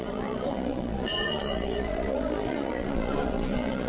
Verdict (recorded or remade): remade